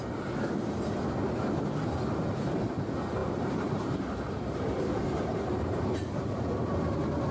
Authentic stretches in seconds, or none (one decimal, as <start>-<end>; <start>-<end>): 0.0-3.2; 6.0-7.3